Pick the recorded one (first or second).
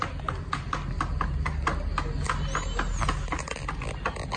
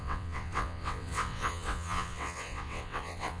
first